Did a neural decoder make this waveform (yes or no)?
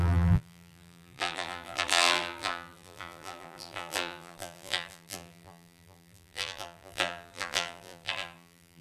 yes